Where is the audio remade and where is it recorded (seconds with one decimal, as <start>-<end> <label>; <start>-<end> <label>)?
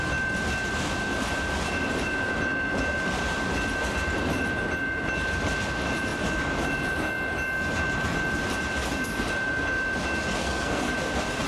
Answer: 0.0-10.4 recorded; 10.4-10.9 remade; 10.9-11.5 recorded